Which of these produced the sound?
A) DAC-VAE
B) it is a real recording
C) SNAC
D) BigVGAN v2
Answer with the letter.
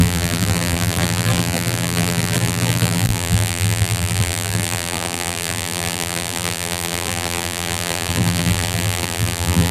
D